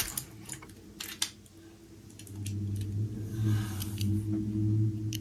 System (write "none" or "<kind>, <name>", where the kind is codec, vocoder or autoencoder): none